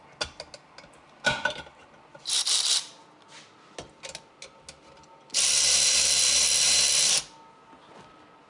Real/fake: real